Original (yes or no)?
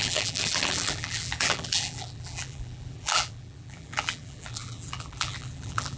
no